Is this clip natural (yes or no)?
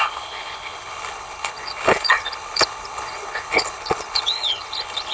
no